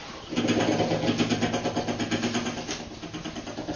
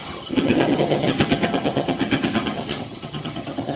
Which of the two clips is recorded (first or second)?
first